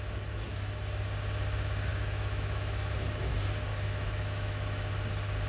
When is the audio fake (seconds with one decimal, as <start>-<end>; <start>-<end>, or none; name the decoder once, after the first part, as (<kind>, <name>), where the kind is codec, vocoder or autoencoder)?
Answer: 1.9-3.3 (autoencoder, DAC-VAE); 3.7-4.9